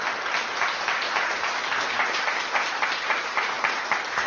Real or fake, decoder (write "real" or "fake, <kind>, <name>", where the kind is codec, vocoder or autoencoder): real